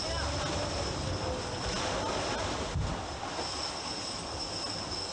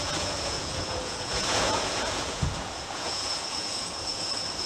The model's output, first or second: second